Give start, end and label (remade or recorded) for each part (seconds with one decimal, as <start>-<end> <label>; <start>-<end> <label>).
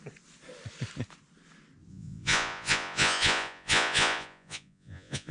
0.0-1.9 recorded; 1.9-5.3 remade